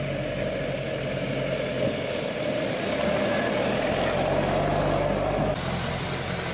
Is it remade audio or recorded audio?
recorded